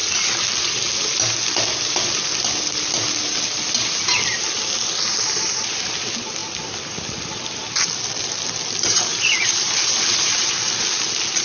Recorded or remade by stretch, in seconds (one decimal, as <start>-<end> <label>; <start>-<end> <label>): 0.0-6.4 recorded; 6.4-7.4 remade; 7.4-11.4 recorded